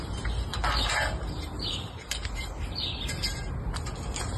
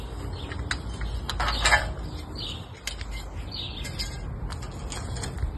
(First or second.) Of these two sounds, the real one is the second